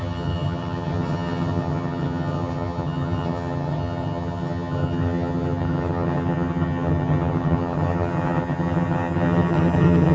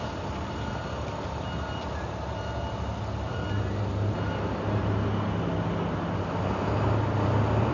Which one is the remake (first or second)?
first